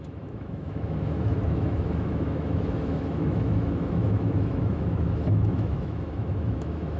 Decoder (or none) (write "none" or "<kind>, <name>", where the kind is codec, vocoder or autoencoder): autoencoder, DAC-VAE